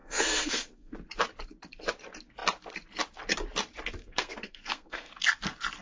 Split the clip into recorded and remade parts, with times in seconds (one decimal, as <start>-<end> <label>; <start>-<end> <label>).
0.0-0.9 remade; 0.9-4.0 recorded; 4.0-5.1 remade; 5.1-5.8 recorded